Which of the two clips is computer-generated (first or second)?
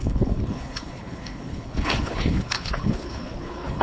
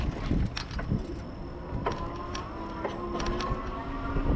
first